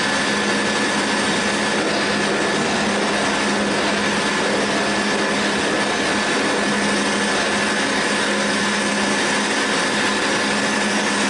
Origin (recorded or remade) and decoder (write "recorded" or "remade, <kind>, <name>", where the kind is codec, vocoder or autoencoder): recorded